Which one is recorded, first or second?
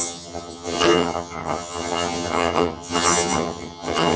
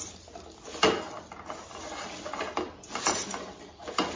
second